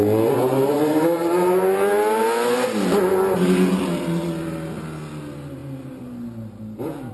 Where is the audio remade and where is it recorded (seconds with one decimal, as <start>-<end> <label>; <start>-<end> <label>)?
0.0-7.1 recorded